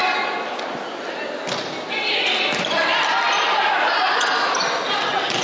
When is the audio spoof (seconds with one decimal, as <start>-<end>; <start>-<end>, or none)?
none